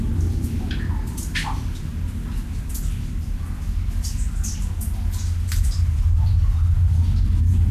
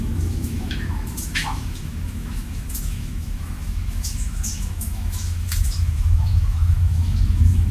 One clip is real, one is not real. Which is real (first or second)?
first